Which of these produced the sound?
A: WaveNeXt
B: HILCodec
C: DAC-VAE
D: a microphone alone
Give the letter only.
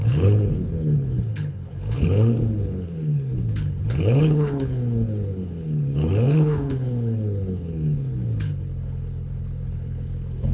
B